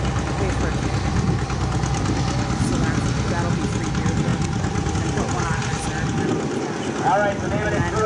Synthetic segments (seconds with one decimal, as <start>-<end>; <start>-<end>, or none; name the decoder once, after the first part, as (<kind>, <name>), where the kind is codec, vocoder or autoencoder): none